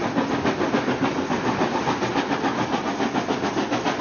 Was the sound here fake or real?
real